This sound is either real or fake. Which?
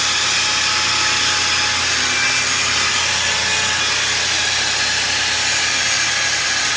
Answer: real